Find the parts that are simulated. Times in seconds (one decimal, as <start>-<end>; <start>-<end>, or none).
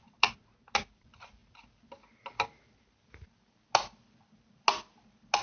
none